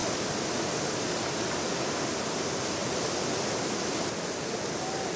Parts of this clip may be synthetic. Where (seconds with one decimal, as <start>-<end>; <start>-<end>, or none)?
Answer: none